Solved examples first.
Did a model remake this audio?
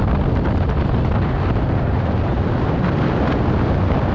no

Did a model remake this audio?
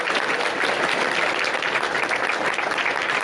no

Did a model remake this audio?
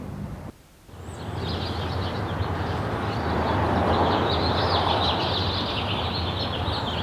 no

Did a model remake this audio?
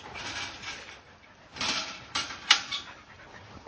no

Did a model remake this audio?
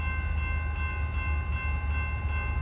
no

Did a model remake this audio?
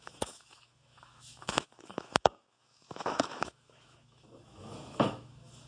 yes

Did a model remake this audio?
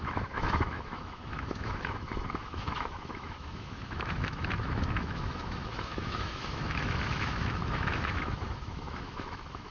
yes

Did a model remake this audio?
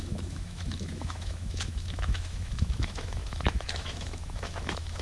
yes